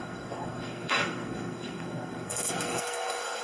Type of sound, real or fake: fake